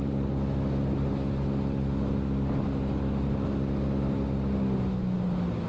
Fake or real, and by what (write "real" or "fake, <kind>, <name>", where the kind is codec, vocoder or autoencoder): real